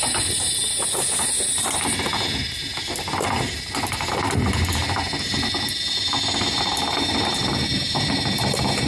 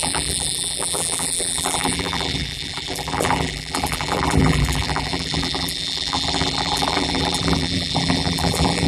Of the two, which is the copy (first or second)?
second